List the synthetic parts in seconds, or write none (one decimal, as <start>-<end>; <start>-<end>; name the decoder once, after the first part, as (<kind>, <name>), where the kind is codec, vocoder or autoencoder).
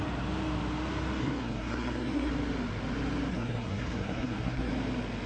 1.2-2.3 (codec, SNAC); 3.3-4.7